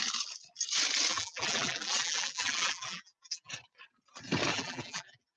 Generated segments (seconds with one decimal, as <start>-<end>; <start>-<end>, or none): 1.1-3.5; 4.5-5.4